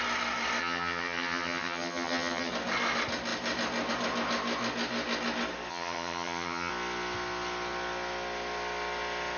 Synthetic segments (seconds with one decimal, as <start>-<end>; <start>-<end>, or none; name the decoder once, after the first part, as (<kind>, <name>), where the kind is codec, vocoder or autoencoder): 0.6-2.5 (vocoder, HiFi-GAN); 5.7-6.7